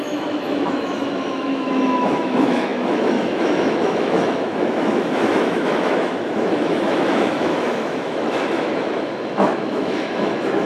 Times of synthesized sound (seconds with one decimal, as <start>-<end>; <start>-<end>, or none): 0.0-10.7